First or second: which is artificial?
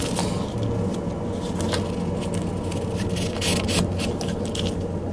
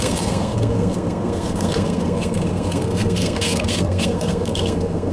second